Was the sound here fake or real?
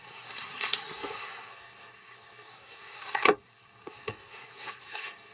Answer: fake